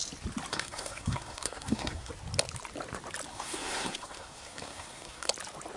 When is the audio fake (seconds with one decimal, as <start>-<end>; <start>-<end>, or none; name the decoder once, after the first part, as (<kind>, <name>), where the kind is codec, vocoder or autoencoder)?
0.5-2.1 (codec, SNAC); 3.3-5.3